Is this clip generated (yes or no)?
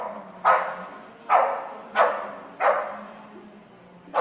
no